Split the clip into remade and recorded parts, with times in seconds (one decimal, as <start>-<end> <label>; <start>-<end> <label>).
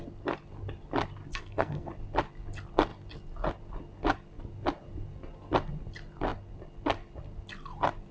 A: 0.0-1.3 recorded; 1.3-1.9 remade; 1.9-8.1 recorded